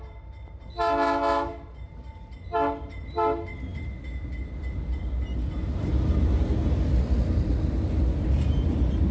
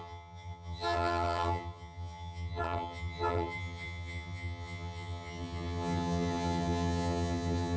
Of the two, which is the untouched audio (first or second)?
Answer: first